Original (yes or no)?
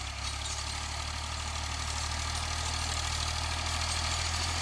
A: yes